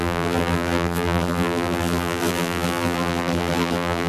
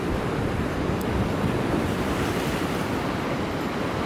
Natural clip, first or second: second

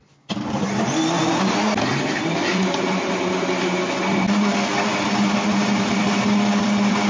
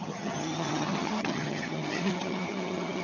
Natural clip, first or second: first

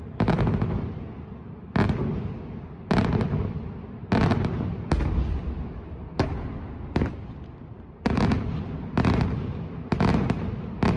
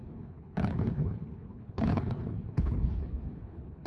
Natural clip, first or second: first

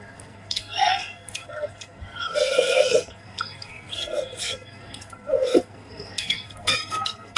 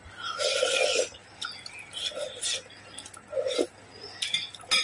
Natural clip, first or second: second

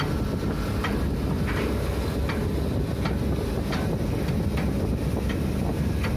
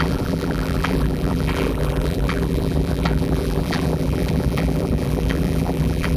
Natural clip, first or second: first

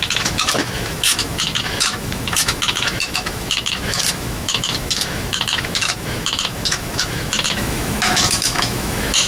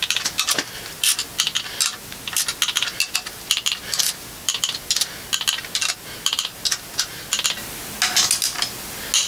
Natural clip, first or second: second